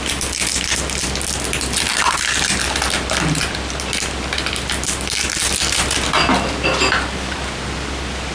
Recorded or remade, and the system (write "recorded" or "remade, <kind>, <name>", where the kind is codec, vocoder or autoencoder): recorded